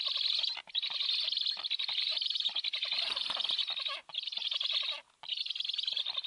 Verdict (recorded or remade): recorded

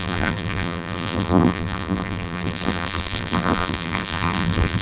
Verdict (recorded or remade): remade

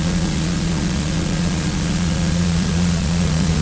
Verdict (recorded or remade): remade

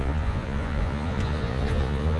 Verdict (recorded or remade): remade